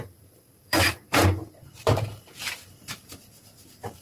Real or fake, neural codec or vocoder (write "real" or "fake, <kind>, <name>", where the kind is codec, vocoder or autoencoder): fake, vocoder, BigVGAN v2